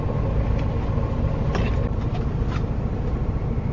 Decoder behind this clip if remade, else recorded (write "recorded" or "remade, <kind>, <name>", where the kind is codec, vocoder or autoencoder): recorded